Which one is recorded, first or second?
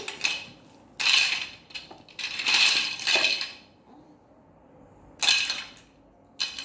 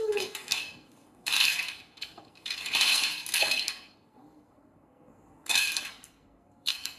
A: first